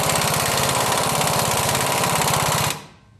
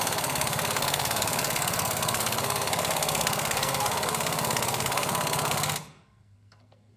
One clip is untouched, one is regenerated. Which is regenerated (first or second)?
second